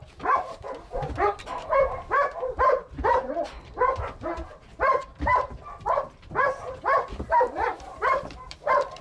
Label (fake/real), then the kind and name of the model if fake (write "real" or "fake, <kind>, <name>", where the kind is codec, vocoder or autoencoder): fake, vocoder, BigVGAN v2